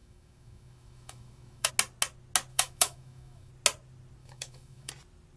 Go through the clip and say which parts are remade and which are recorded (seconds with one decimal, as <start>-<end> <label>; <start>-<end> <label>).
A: 0.0-1.7 remade; 1.7-2.5 recorded; 2.5-3.5 remade; 3.5-4.2 recorded; 4.2-4.9 remade; 4.9-5.4 recorded